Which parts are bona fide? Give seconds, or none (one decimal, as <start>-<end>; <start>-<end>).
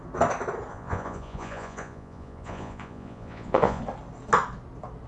0.0-0.7; 3.8-5.1